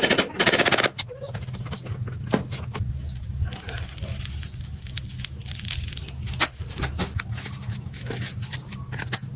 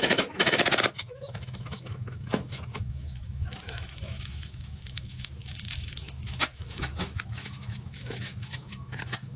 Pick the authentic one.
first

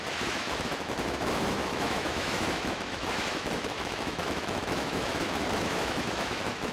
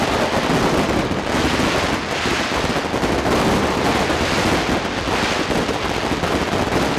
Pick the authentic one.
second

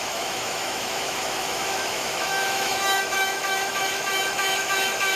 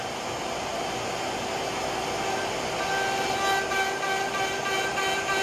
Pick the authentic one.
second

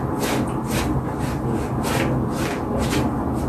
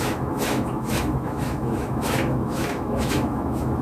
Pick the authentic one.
first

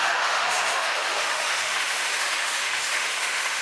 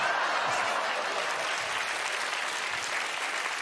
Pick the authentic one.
second